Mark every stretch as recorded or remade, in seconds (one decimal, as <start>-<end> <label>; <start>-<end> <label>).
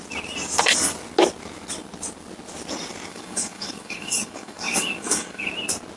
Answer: 0.0-3.1 recorded; 3.1-5.5 remade; 5.5-6.0 recorded